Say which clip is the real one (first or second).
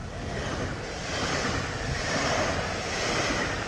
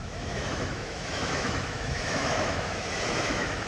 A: first